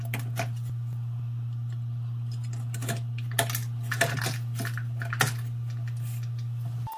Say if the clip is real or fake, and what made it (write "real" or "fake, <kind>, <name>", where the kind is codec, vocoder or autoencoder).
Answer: real